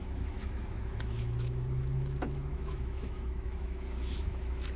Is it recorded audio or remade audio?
remade